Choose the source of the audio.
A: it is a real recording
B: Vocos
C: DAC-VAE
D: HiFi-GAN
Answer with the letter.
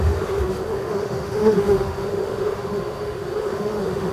C